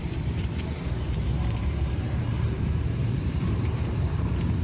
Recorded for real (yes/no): no